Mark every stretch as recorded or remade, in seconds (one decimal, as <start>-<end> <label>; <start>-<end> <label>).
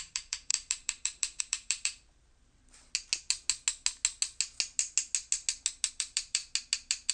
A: 0.0-2.6 remade; 2.6-5.9 recorded; 5.9-6.4 remade; 6.4-7.1 recorded